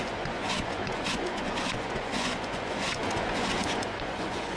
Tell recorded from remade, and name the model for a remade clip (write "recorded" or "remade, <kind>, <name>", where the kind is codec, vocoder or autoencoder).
remade, vocoder, Vocos